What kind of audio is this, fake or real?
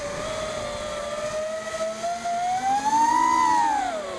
real